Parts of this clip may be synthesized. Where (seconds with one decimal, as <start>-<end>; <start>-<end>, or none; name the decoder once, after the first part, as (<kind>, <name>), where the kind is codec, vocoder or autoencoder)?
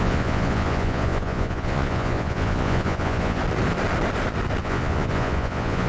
0.0-3.4 (vocoder, Vocos); 4.6-5.9